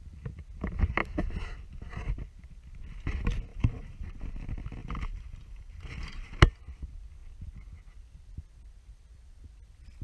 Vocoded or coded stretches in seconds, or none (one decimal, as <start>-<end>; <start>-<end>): 3.5-4.3; 4.8-6.4